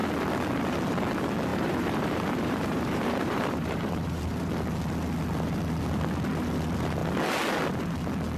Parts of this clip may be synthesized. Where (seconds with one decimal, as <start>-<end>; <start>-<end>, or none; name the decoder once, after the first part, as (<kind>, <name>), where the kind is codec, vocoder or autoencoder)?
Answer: 1.5-4.5 (vocoder, BigVGAN v2)